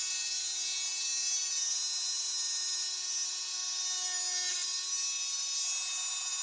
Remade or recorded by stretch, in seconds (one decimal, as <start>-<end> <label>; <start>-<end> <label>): 0.0-6.4 recorded